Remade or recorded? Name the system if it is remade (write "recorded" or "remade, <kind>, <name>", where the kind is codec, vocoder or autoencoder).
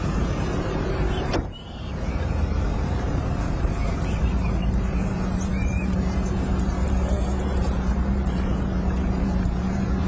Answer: remade, vocoder, BigVGAN v2